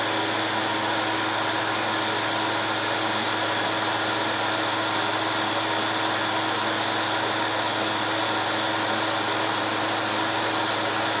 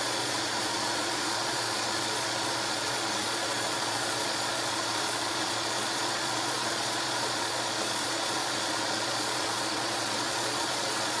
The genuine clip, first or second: first